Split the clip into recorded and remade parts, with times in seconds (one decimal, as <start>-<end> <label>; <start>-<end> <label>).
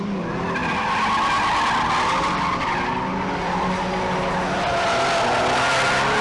0.0-6.2 recorded